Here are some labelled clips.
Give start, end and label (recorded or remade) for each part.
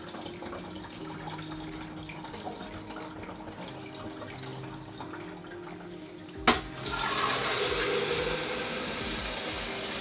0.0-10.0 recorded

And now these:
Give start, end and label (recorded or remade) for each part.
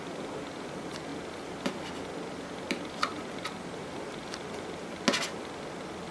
0.0-6.1 recorded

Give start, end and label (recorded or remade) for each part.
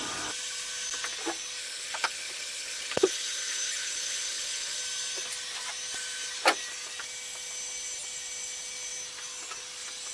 0.0-1.6 recorded; 1.6-4.8 remade; 4.8-10.1 recorded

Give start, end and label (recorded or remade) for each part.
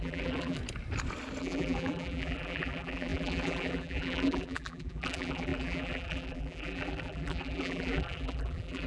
0.0-0.6 remade; 0.6-1.4 recorded; 1.4-8.9 remade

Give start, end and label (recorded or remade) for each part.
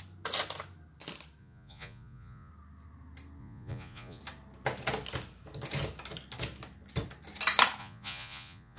0.0-1.4 recorded; 1.4-2.5 remade; 2.5-3.4 recorded; 3.4-4.2 remade; 4.2-7.8 recorded; 7.8-8.8 remade